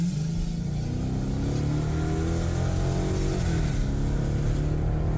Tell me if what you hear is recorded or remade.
recorded